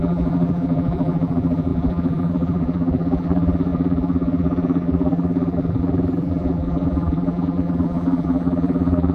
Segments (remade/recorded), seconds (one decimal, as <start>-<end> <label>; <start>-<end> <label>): 0.0-9.1 remade